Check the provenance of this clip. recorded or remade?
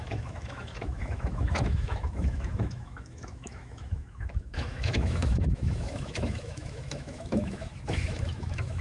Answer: remade